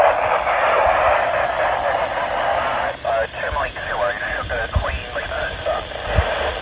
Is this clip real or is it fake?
real